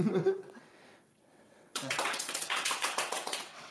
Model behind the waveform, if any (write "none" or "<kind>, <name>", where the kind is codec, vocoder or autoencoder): vocoder, WaveNeXt